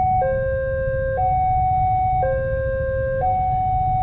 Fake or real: real